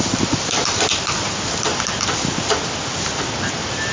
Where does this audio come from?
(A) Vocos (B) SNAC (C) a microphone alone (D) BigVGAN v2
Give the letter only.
C